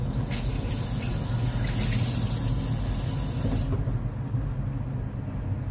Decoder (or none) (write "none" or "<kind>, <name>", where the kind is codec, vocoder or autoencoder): none